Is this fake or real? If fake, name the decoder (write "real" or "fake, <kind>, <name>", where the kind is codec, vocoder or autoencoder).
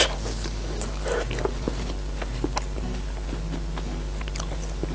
real